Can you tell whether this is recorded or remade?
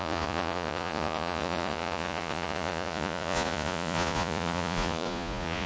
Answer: remade